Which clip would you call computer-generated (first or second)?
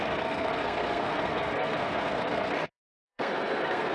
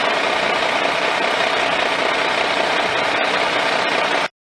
first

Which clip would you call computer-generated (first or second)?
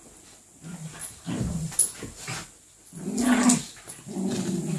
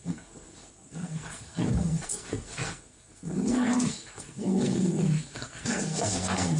second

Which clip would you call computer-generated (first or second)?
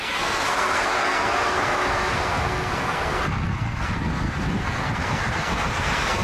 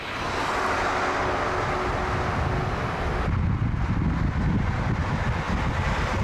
first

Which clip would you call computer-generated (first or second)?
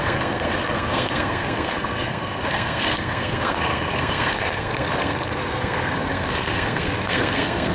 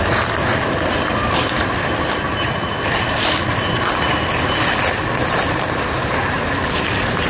first